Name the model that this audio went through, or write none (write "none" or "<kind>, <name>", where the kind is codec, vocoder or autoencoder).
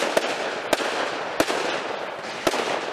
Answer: none